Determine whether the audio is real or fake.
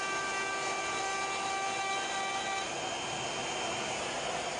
real